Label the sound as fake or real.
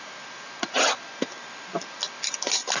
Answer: real